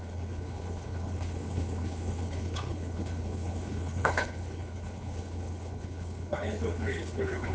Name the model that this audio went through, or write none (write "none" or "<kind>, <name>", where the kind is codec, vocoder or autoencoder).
codec, HILCodec